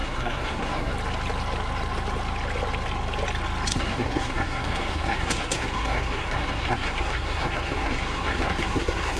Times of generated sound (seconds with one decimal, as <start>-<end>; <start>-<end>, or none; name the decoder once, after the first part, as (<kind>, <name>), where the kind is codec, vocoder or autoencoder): 0.0-0.9 (codec, SNAC); 3.7-9.2